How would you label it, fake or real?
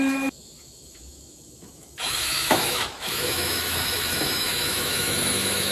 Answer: fake